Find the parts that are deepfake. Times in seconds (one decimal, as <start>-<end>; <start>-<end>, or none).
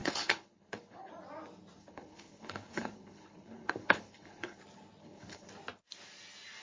0.0-1.1; 1.8-4.6; 5.0-5.5